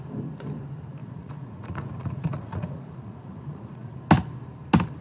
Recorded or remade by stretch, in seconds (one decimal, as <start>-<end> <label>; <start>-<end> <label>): 0.0-1.0 recorded; 1.0-4.0 remade; 4.0-5.0 recorded

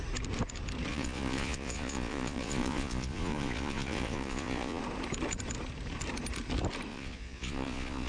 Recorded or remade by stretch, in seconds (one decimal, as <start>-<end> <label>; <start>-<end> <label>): 0.0-0.9 recorded; 0.9-4.8 remade; 4.8-6.9 recorded; 6.9-8.1 remade